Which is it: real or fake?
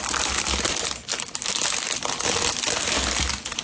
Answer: real